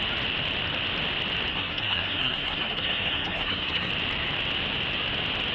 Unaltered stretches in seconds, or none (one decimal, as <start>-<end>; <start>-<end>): 0.0-1.5; 3.9-5.5